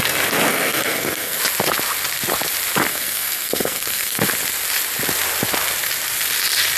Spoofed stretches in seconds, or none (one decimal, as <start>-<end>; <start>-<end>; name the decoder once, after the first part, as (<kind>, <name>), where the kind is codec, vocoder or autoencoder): 0.5-1.4 (codec, SNAC); 2.9-4.2